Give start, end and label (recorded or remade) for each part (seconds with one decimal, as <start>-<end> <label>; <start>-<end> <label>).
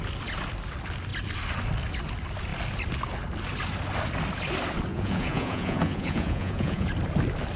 0.0-4.9 recorded; 4.9-6.9 remade; 6.9-7.6 recorded